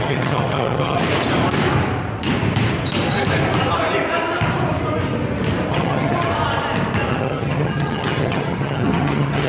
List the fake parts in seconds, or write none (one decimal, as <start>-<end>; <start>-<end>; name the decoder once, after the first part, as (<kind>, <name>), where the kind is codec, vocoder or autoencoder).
0.0-1.0 (vocoder, HiFi-GAN); 5.7-6.3; 7.1-9.5

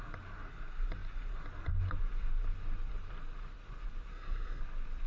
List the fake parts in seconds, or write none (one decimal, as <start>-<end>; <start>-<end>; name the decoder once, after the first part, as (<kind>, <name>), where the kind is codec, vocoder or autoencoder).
4.1-4.6 (codec, SNAC)

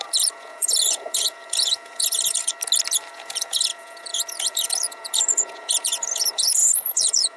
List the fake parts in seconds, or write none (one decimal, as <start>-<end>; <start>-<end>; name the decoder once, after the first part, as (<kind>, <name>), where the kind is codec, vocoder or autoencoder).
0.0-2.5 (vocoder, Vocos); 3.1-7.4

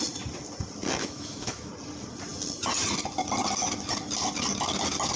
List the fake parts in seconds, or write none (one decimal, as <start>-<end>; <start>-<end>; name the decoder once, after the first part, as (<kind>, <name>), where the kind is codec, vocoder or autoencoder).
1.0-1.7 (autoencoder, DAC-VAE)

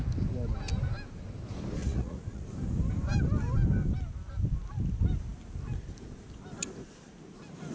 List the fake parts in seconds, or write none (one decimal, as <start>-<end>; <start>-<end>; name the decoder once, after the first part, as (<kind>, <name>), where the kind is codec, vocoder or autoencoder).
1.8-2.4 (vocoder, Vocos)